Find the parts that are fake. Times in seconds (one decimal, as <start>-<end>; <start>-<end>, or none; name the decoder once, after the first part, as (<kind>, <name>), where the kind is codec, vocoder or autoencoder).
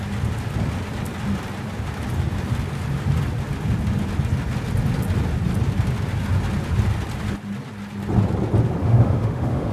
8.8-9.7 (autoencoder, DAC-VAE)